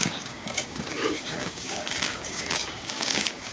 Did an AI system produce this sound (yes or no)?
yes